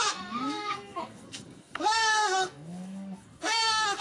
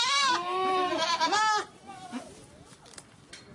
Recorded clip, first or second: second